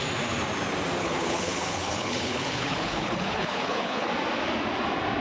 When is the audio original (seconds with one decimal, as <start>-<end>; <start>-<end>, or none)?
0.0-1.0; 4.1-5.2